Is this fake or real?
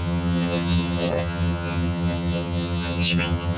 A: fake